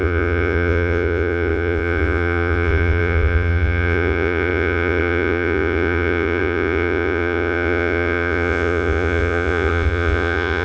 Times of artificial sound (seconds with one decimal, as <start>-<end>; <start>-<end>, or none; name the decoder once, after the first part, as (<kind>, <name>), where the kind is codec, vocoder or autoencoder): 0.0-10.6 (vocoder, Vocos)